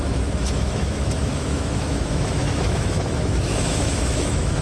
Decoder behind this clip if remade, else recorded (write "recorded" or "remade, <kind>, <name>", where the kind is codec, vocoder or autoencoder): remade, autoencoder, DAC-VAE